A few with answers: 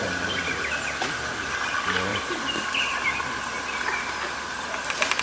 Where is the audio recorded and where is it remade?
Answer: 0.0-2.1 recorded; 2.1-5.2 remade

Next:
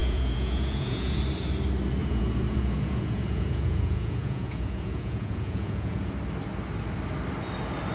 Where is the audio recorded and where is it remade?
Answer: 0.0-1.2 remade; 1.2-2.0 recorded; 2.0-6.1 remade; 6.1-7.9 recorded

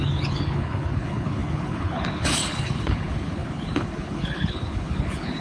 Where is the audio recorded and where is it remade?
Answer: 0.0-5.4 remade

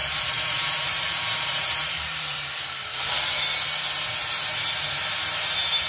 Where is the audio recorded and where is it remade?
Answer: 0.0-3.5 remade; 3.5-4.2 recorded; 4.2-5.9 remade